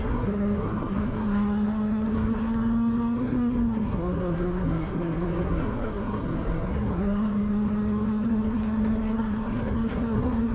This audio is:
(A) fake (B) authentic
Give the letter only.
A